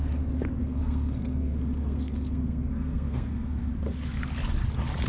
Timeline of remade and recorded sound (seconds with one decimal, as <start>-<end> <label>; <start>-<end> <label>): 0.0-0.6 recorded; 0.6-3.7 remade; 3.7-5.1 recorded